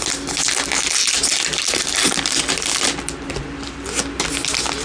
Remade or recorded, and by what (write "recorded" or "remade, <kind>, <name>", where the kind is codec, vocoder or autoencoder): recorded